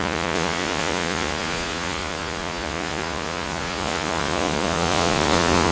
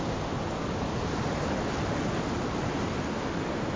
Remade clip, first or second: first